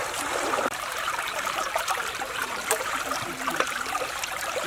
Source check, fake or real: fake